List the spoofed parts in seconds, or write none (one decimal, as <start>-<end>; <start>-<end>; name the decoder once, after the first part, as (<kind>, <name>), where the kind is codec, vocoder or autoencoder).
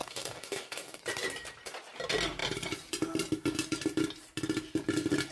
0.0-1.0 (codec, DAC)